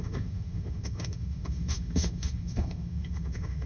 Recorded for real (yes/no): no